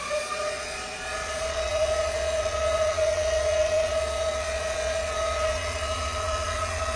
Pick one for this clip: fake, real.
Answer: fake